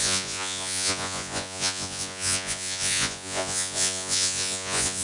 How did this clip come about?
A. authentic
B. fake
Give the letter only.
B